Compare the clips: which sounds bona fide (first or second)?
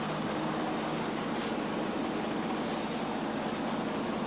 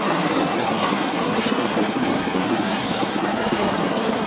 first